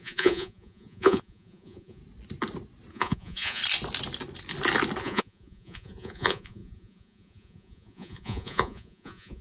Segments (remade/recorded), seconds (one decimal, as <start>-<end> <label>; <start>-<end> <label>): 0.0-2.0 remade; 2.0-2.9 recorded; 2.9-3.6 remade; 3.6-5.0 recorded; 5.0-9.4 remade